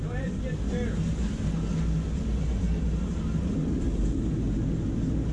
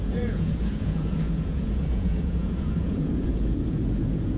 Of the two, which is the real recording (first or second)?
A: first